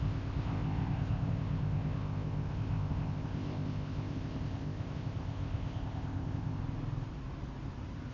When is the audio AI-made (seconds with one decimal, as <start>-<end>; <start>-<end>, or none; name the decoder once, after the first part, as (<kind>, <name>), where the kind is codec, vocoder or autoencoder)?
0.0-6.6 (codec, ZipCodec)